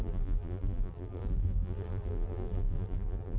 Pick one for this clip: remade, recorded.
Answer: remade